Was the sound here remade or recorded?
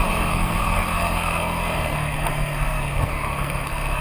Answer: remade